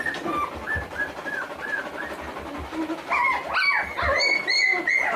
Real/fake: real